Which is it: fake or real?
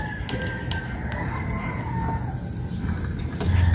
real